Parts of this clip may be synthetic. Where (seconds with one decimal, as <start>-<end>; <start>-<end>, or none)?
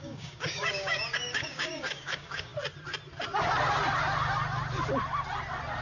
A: 0.0-2.5